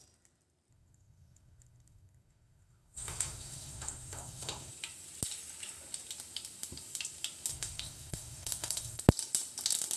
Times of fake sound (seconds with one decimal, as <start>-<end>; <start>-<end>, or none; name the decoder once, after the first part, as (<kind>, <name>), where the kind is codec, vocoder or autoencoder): 0.7-4.7 (codec, SNAC); 7.5-9.0